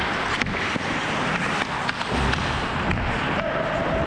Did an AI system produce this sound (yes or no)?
no